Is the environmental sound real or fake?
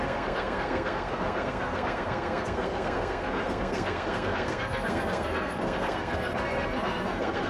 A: fake